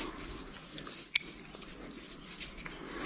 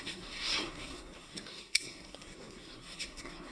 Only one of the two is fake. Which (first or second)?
second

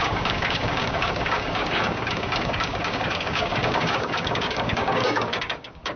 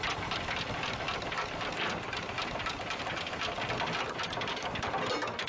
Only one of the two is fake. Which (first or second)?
first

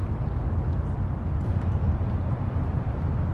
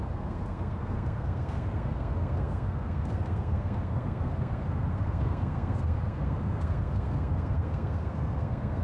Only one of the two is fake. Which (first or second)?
second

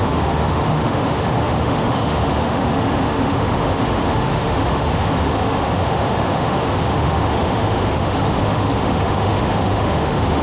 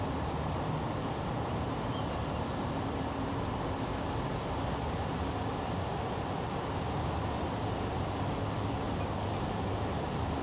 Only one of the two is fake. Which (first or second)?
first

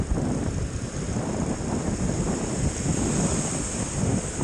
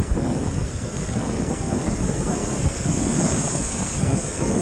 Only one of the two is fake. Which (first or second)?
second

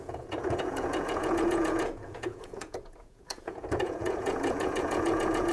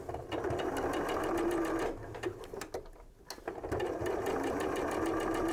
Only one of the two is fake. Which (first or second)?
first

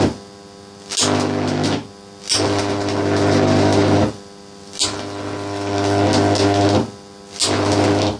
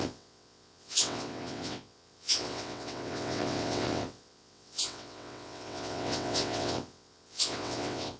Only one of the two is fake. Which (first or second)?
second